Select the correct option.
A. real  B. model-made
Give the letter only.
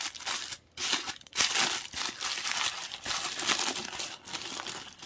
A